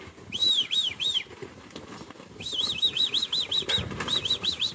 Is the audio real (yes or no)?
no